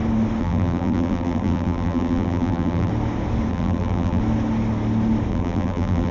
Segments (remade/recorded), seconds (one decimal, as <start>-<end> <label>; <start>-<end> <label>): 0.0-0.4 recorded; 0.4-2.9 remade; 2.9-3.5 recorded; 3.5-4.2 remade; 4.2-5.3 recorded; 5.3-6.1 remade